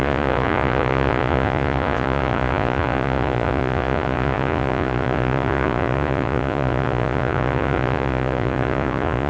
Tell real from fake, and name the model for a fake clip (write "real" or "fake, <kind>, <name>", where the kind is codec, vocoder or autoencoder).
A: fake, vocoder, Vocos